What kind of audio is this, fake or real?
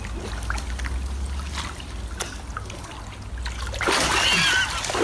real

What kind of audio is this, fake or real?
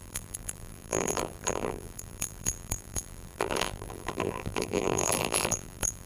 fake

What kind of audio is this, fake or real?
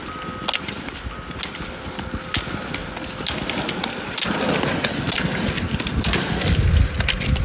real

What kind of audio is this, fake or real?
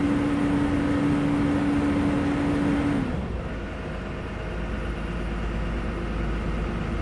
real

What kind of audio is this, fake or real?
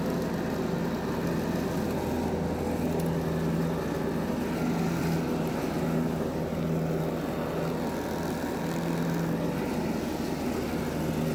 real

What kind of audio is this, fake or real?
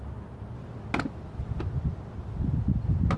real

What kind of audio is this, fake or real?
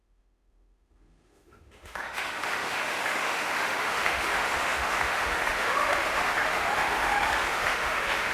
fake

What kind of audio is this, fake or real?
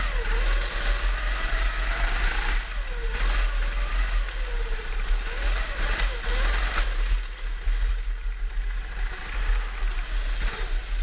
real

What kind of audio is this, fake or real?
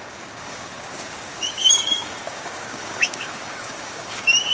fake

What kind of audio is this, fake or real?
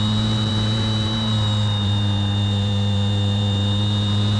fake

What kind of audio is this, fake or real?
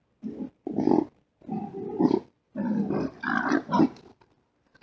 real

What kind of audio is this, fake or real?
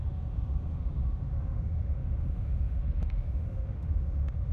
fake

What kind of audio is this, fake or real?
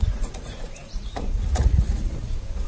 fake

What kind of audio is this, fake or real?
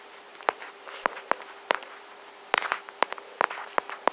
real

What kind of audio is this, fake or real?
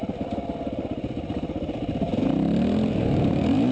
real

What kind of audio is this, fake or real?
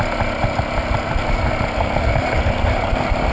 real